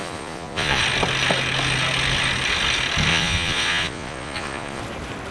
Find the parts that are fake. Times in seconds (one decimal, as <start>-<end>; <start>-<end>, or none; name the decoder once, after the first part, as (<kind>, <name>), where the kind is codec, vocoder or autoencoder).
0.0-0.8 (vocoder, Vocos); 3.1-4.8